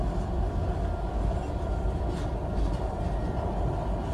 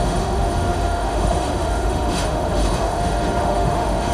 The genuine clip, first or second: first